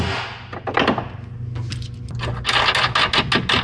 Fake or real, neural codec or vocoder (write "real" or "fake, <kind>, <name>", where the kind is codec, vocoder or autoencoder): real